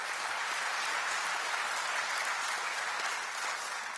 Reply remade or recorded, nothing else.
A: recorded